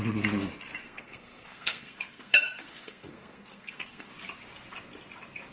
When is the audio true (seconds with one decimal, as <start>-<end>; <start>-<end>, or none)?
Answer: 0.0-0.8; 4.1-5.5